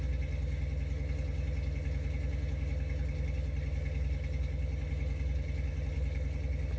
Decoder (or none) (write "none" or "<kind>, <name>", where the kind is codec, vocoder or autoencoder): none